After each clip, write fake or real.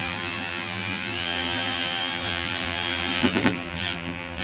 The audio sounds fake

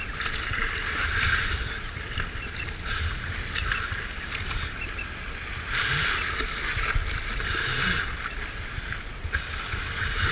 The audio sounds real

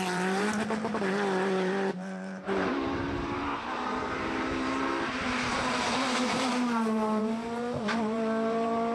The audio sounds fake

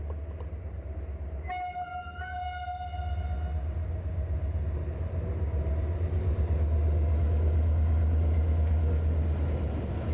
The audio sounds real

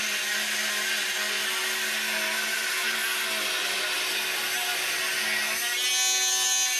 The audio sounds real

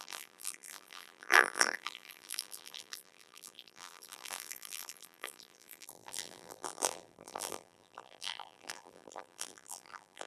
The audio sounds fake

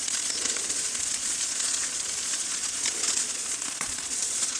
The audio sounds fake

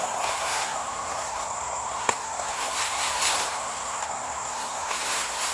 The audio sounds fake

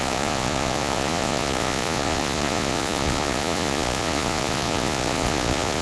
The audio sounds fake